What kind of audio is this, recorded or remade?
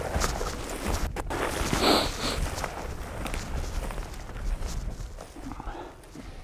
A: recorded